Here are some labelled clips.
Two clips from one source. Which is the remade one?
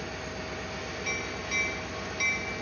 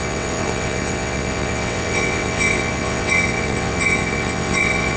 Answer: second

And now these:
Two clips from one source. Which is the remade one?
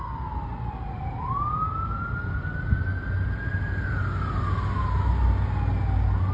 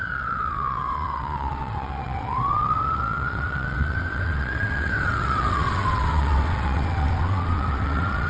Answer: second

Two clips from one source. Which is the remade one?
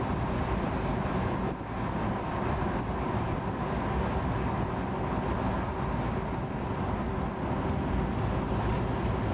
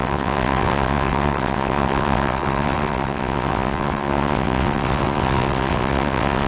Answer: second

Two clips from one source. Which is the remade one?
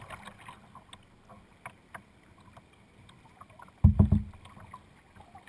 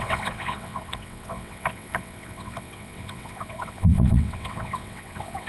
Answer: second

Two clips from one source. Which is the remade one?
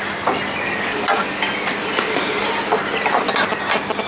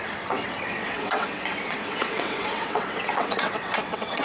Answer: second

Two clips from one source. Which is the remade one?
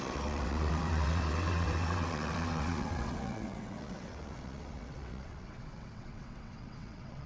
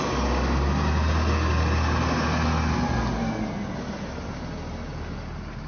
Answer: first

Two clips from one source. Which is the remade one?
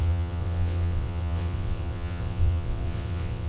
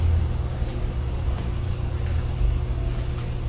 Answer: first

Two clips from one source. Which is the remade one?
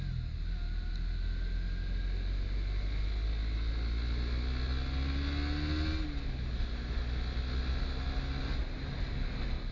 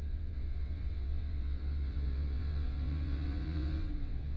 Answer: second